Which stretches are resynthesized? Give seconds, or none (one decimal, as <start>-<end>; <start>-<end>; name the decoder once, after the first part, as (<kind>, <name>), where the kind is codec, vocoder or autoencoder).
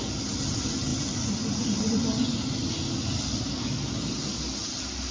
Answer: none